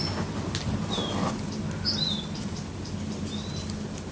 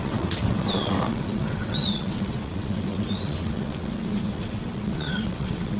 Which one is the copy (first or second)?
second